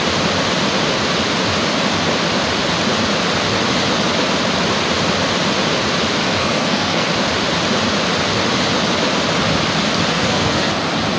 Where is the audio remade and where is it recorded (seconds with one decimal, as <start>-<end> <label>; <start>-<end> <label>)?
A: 0.0-6.2 recorded; 6.2-7.1 remade; 7.1-10.1 recorded; 10.1-10.7 remade; 10.7-11.2 recorded